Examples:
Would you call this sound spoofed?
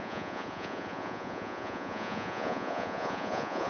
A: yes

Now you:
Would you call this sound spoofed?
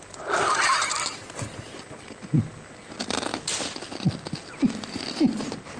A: no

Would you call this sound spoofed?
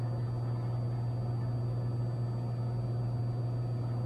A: no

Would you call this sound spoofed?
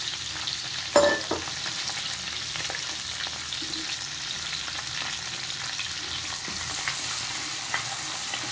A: no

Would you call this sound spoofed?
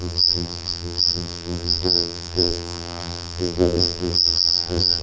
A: yes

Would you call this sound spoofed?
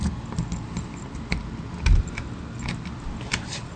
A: no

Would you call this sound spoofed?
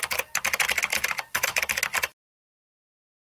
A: no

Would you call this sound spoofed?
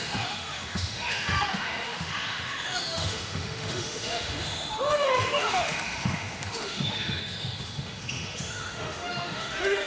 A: yes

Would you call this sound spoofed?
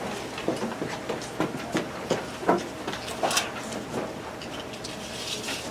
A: no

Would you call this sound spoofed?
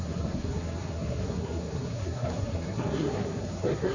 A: yes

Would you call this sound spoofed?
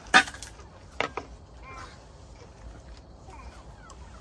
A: no